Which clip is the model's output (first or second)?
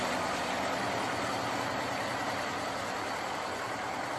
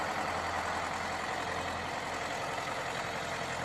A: first